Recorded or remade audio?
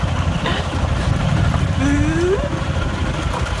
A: recorded